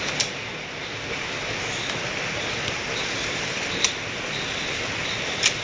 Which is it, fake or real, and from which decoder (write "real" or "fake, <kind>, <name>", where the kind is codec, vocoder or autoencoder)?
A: real